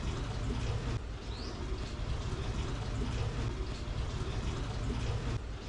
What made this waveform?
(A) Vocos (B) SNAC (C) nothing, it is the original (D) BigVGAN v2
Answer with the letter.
C